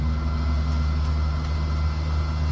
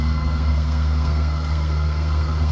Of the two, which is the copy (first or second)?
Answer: second